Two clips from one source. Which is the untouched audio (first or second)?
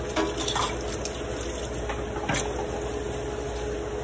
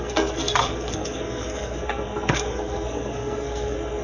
first